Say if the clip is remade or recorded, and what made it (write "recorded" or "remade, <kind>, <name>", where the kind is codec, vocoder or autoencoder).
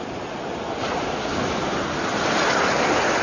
recorded